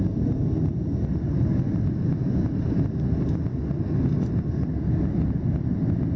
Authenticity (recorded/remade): recorded